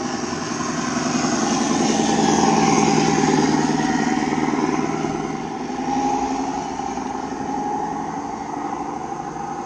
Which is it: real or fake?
real